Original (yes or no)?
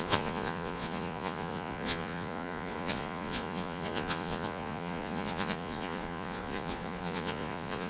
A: no